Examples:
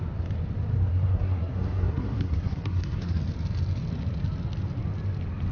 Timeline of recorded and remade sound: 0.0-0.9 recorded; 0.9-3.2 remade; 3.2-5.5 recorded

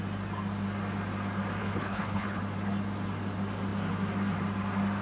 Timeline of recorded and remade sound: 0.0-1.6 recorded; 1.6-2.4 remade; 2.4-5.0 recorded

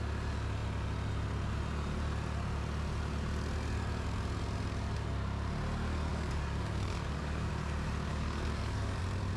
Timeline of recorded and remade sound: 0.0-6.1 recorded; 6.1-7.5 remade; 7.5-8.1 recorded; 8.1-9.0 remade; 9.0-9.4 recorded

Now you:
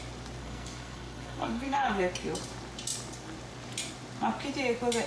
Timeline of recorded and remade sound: 0.0-0.4 recorded; 0.4-2.1 remade; 2.1-5.1 recorded